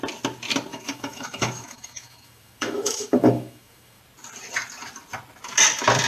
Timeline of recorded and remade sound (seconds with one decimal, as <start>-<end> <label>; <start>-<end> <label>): 0.0-0.7 recorded; 0.7-4.0 remade; 4.0-6.1 recorded